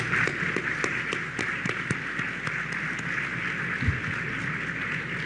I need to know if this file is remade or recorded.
recorded